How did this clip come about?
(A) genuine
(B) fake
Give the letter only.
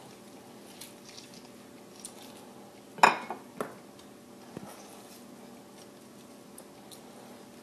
A